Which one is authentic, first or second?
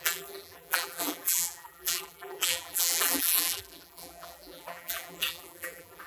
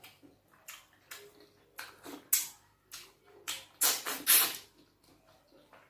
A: second